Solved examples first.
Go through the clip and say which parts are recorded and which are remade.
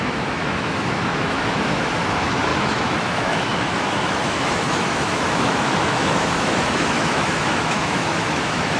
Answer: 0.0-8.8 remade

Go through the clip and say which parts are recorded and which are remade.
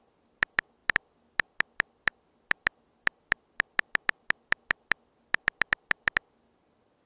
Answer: 0.0-7.1 recorded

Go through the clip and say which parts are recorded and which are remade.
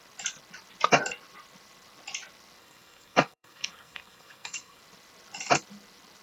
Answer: 0.0-2.6 recorded; 2.6-4.8 remade; 4.8-6.2 recorded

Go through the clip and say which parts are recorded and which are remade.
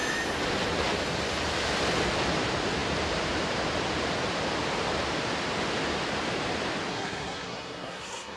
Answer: 0.0-6.9 recorded; 6.9-8.4 remade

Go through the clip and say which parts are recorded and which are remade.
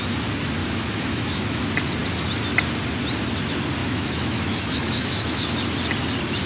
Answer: 0.0-0.6 recorded; 0.6-1.6 remade; 1.6-3.8 recorded; 3.8-5.6 remade; 5.6-6.5 recorded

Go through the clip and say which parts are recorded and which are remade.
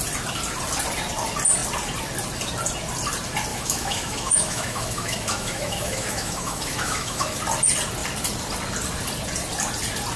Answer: 0.0-3.5 recorded; 3.5-7.4 remade; 7.4-10.2 recorded